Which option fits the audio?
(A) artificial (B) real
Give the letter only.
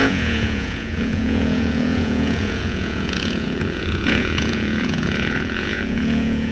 A